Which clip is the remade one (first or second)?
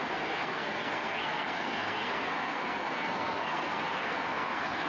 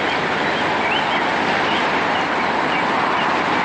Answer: first